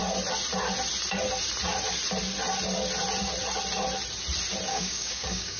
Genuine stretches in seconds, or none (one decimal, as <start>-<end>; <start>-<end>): 0.0-4.7